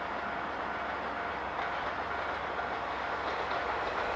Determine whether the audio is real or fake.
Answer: real